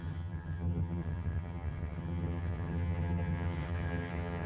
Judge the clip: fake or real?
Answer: fake